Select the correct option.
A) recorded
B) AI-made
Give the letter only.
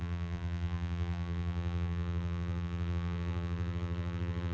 B